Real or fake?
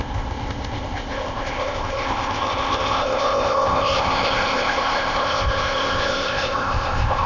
fake